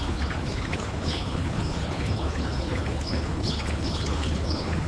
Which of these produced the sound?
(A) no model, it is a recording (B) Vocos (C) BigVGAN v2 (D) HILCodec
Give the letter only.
D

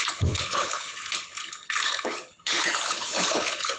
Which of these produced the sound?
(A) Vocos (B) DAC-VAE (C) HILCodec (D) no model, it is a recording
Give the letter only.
C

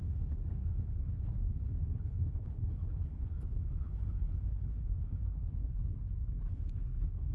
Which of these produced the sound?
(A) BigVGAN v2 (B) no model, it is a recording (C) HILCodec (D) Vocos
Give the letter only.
C